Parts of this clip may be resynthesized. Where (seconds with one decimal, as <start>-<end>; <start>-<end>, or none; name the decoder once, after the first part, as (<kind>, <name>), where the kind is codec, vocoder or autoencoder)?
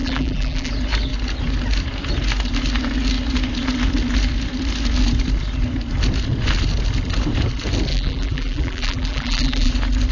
0.0-0.7 (vocoder, BigVGAN v2); 7.9-9.7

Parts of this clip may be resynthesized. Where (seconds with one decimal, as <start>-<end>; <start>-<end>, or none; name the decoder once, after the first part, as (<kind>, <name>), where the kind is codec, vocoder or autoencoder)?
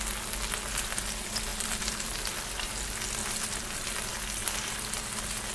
1.5-2.7 (vocoder, BigVGAN v2); 3.2-3.9